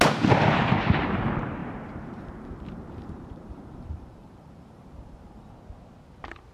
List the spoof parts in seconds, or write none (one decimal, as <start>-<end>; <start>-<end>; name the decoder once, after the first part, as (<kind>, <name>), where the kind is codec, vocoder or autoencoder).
1.6-5.5 (vocoder, BigVGAN v2)

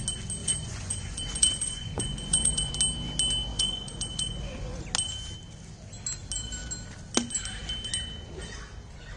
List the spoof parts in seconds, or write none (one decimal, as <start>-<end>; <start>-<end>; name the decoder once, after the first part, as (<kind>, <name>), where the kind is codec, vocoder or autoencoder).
0.4-2.7 (vocoder, Vocos); 3.5-4.8